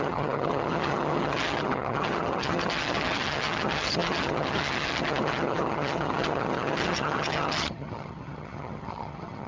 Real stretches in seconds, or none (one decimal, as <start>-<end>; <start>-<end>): none

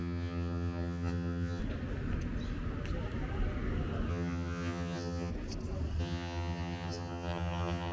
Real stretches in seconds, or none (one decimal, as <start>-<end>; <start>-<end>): 1.6-4.1; 5.3-6.0

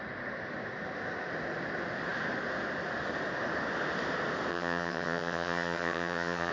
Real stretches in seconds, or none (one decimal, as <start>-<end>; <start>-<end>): 0.0-4.5

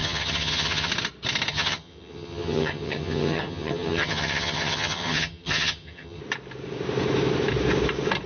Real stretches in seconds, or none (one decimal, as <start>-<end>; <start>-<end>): 0.9-1.5; 6.2-8.3

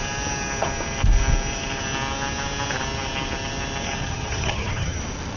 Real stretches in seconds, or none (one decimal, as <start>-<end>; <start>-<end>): 0.0-4.0; 5.0-5.4

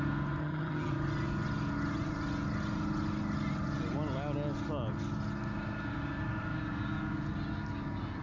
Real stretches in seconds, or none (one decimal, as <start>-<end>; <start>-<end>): 0.0-0.4; 0.9-8.2